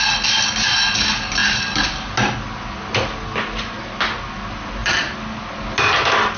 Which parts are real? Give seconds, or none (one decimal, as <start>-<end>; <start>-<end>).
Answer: 0.0-6.4